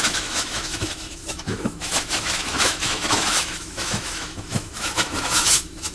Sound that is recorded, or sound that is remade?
remade